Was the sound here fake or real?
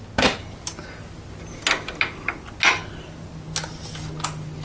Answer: real